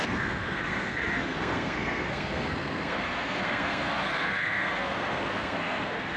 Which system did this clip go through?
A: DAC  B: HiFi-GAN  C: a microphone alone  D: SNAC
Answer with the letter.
D